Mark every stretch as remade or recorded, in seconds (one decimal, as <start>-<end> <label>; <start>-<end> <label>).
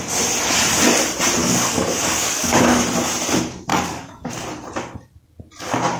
0.0-1.4 recorded; 1.4-2.8 remade; 2.8-3.7 recorded; 3.7-4.3 remade; 4.3-6.0 recorded